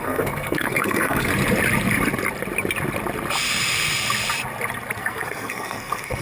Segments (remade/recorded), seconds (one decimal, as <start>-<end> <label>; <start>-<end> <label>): 0.0-1.3 remade; 1.3-5.0 recorded; 5.0-6.2 remade